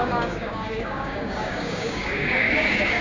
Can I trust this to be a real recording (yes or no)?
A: no